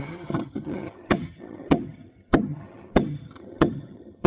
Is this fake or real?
fake